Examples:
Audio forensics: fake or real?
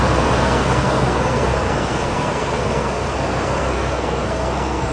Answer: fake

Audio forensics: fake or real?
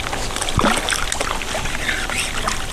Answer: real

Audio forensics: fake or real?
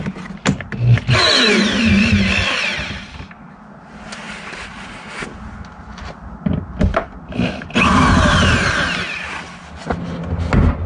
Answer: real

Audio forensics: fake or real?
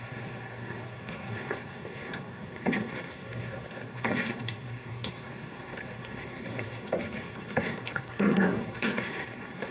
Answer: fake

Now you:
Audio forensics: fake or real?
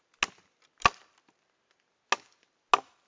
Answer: real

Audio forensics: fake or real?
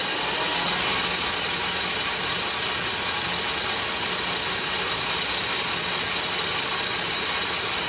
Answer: real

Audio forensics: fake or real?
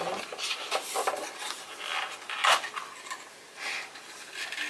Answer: real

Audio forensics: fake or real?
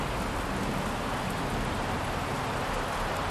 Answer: real